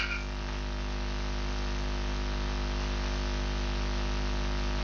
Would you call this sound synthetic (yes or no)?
no